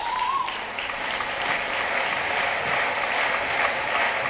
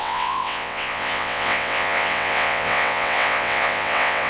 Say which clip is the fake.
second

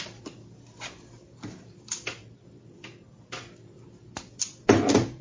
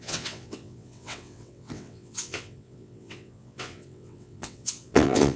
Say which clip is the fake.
second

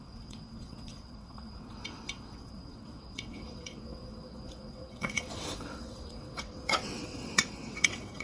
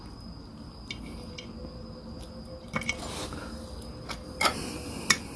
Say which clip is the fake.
first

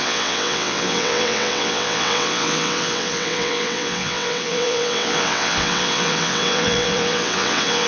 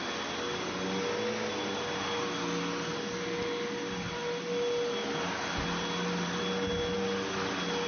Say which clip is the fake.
first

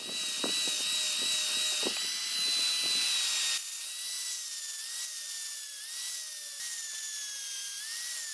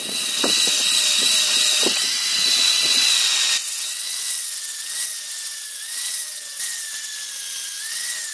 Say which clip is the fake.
second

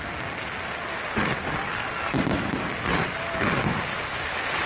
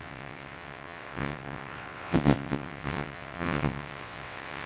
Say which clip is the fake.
second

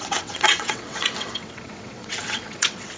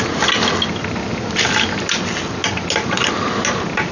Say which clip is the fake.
first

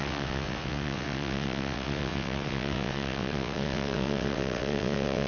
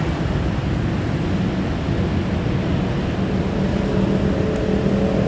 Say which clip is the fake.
first